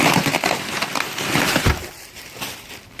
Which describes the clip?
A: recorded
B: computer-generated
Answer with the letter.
B